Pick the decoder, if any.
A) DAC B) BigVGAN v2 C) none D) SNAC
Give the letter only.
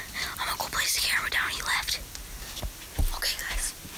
C